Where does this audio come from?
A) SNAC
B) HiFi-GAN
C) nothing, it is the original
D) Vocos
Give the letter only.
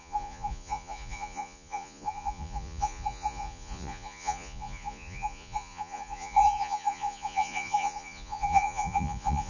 D